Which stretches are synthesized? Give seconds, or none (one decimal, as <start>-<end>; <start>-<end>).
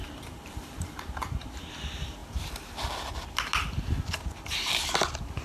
0.0-1.7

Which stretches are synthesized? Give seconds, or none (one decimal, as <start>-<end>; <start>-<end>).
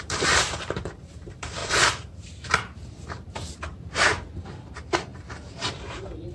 0.0-6.3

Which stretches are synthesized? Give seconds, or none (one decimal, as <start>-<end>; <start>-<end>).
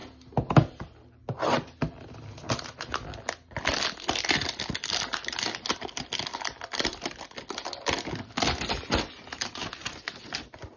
none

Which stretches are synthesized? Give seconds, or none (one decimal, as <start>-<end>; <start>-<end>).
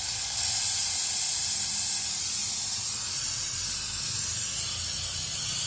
none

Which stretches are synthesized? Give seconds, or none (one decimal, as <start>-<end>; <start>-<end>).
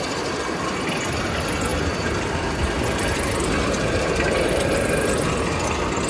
1.7-5.4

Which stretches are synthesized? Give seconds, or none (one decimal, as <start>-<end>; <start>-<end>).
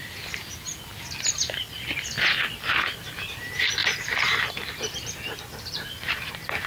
0.0-0.9; 2.4-6.7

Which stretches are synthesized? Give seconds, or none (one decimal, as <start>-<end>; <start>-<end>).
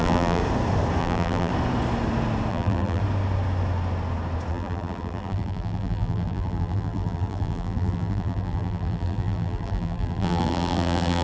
0.0-0.4; 1.0-1.5; 2.5-3.0; 4.5-11.2